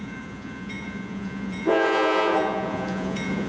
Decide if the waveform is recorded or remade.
remade